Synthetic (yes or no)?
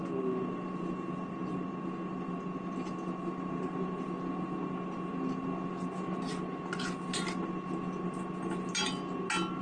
no